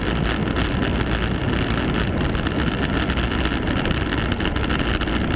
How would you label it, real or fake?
real